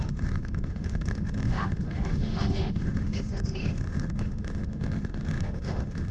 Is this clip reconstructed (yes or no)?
yes